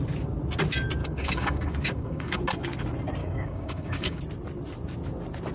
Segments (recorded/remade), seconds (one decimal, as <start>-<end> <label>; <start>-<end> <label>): 0.0-1.0 recorded; 1.0-2.4 remade; 2.4-3.2 recorded; 3.2-4.2 remade; 4.2-5.5 recorded